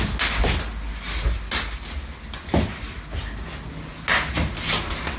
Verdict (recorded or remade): recorded